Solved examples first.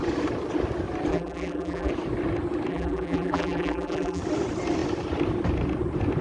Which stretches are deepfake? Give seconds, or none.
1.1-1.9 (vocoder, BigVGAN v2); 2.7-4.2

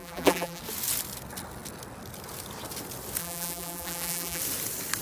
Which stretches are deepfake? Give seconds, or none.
0.0-0.6 (vocoder, BigVGAN v2); 3.2-4.4

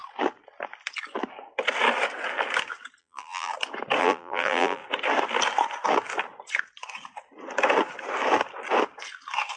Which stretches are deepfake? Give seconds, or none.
3.0-3.5 (vocoder, BigVGAN v2); 4.0-4.8

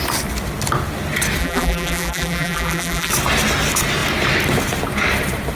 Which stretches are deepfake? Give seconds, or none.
1.4-3.1 (vocoder, BigVGAN v2)

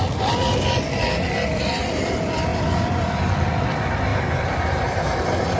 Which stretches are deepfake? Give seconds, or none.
2.5-3.3 (vocoder, BigVGAN v2); 4.1-5.6

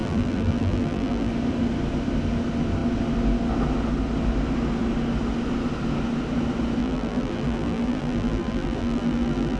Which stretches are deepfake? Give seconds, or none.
0.0-1.3 (vocoder, BigVGAN v2); 6.8-9.6